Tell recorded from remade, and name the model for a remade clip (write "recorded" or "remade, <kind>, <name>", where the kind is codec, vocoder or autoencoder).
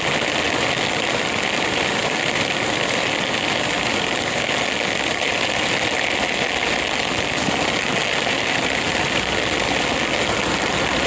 recorded